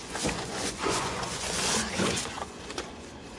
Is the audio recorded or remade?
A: remade